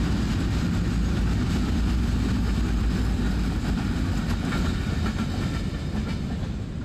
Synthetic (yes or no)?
no